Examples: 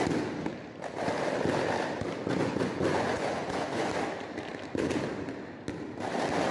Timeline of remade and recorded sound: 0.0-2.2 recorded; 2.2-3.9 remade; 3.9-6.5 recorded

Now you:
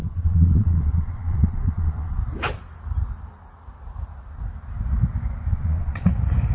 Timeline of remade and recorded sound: 0.0-2.2 remade; 2.2-5.5 recorded; 5.5-6.1 remade; 6.1-6.5 recorded

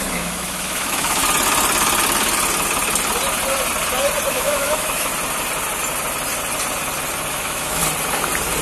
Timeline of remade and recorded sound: 0.0-1.2 remade; 1.2-4.3 recorded; 4.3-5.1 remade; 5.1-7.3 recorded; 7.3-7.8 remade; 7.8-8.6 recorded

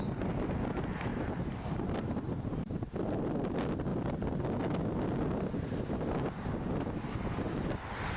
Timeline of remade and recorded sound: 0.0-1.1 recorded; 1.1-2.7 remade; 2.7-8.2 recorded

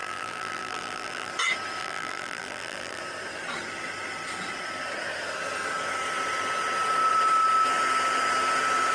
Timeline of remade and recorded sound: 0.0-1.3 remade; 1.3-1.8 recorded; 1.8-3.0 remade; 3.0-8.9 recorded

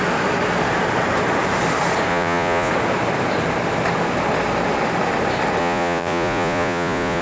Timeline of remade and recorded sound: 0.0-2.1 recorded; 2.1-2.7 remade; 2.7-5.6 recorded; 5.6-7.2 remade

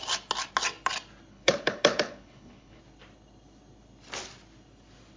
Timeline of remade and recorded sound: 0.0-1.3 recorded; 1.3-2.8 remade; 2.8-5.2 recorded

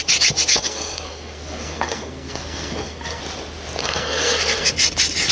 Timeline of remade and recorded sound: 0.0-0.5 recorded; 0.5-3.2 remade; 3.2-3.8 recorded; 3.8-4.7 remade; 4.7-5.3 recorded